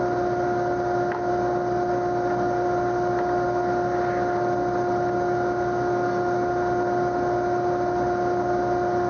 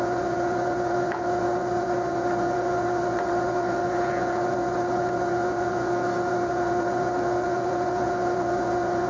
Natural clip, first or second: first